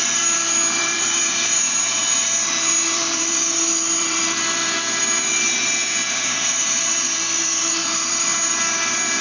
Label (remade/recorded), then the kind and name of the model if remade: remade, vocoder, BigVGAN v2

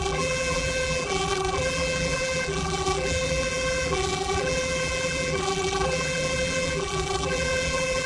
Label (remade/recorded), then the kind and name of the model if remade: remade, vocoder, BigVGAN v2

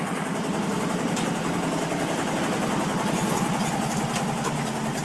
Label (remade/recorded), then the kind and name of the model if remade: remade, vocoder, BigVGAN v2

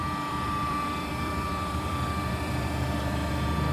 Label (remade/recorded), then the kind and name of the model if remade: remade, vocoder, BigVGAN v2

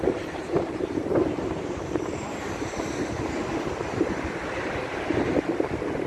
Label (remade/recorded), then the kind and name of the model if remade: remade, vocoder, BigVGAN v2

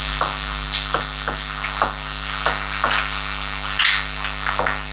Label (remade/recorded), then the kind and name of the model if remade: recorded